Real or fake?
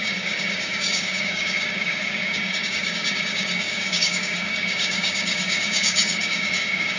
fake